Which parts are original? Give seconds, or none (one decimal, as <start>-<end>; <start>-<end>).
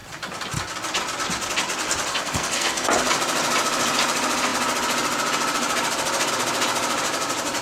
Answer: 0.0-2.1; 2.9-7.6